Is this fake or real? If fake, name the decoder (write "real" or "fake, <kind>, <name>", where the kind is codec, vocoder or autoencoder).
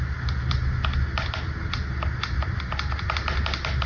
real